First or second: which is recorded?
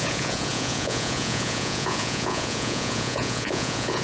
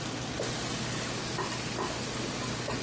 second